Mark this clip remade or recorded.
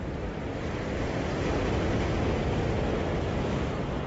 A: recorded